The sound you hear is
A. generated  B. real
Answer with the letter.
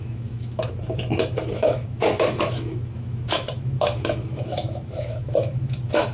A